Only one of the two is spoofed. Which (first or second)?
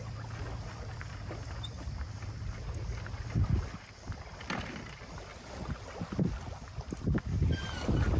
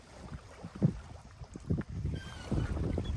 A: second